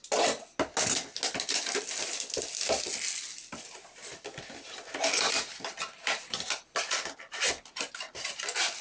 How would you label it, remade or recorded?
recorded